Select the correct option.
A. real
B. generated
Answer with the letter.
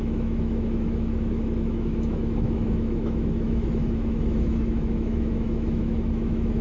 B